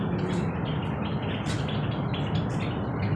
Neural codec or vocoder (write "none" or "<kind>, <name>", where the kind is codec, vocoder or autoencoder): none